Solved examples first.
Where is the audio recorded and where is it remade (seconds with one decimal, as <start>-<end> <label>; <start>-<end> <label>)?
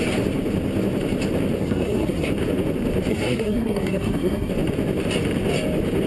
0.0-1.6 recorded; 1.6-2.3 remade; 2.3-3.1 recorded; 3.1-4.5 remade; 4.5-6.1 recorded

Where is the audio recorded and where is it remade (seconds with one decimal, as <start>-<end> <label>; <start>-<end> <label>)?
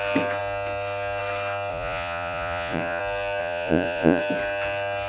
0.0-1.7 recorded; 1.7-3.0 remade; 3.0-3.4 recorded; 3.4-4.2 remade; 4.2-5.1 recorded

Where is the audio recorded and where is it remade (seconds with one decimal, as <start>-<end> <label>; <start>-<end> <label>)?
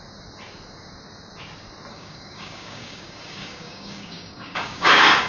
0.0-1.9 recorded; 1.9-5.3 remade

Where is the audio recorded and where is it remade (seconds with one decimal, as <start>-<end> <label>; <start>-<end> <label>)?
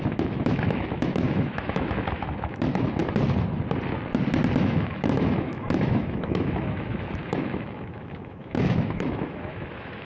0.0-3.0 remade; 3.0-4.6 recorded; 4.6-10.0 remade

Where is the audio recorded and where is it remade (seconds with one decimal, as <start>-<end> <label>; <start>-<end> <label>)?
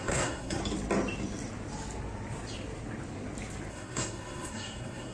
0.0-0.6 remade; 0.6-3.7 recorded; 3.7-5.1 remade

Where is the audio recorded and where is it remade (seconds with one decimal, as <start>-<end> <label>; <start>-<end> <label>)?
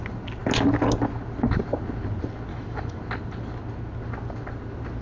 0.0-2.5 recorded; 2.5-3.0 remade; 3.0-5.0 recorded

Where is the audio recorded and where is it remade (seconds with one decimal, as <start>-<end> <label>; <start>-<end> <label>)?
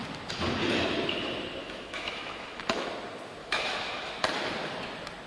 0.0-1.6 recorded; 1.6-2.6 remade; 2.6-3.4 recorded; 3.4-4.1 remade; 4.1-5.3 recorded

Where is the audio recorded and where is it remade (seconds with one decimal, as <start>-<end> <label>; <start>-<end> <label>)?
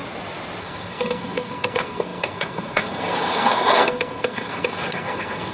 0.0-0.6 recorded; 0.6-5.5 remade